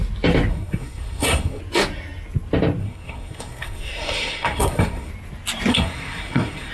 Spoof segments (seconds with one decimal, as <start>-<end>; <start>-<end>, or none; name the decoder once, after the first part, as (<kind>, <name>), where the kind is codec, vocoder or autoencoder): 0.5-1.6 (codec, SNAC); 2.8-5.1; 5.7-6.7